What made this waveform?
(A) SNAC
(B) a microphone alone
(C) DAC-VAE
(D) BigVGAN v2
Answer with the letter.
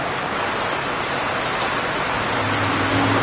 B